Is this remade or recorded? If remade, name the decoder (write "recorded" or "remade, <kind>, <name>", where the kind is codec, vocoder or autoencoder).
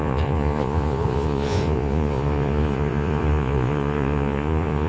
remade, vocoder, Vocos